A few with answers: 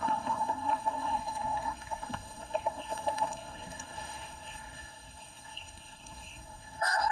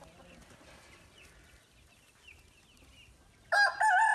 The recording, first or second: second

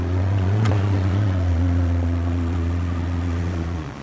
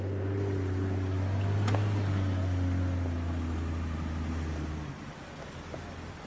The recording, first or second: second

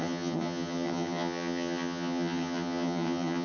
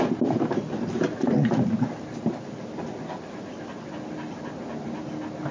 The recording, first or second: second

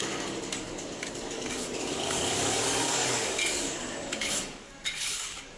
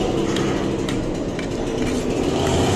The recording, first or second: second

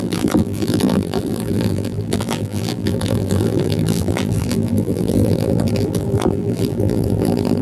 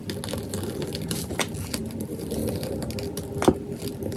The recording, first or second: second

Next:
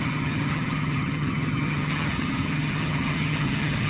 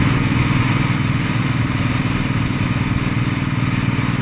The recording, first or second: second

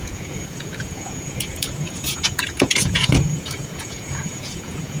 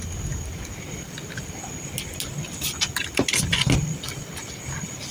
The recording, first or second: second